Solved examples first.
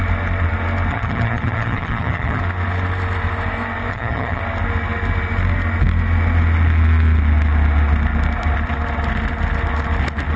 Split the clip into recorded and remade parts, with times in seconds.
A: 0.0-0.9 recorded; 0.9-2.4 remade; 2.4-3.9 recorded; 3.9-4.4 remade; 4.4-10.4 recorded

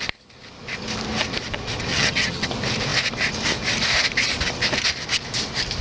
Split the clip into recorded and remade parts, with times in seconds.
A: 0.0-1.9 recorded; 1.9-2.5 remade; 2.5-5.8 recorded

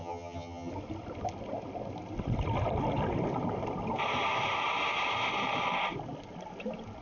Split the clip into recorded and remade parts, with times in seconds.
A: 0.0-0.7 remade; 0.7-7.0 recorded

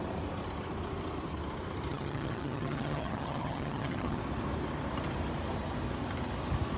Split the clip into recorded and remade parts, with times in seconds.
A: 0.0-1.9 recorded; 1.9-4.2 remade; 4.2-6.8 recorded

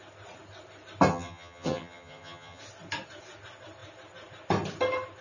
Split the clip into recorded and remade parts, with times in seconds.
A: 0.0-1.1 recorded; 1.1-2.6 remade; 2.6-5.2 recorded

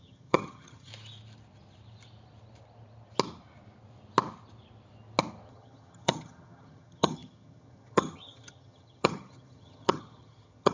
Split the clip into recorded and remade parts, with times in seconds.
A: 0.0-0.9 remade; 0.9-5.5 recorded; 5.5-10.7 remade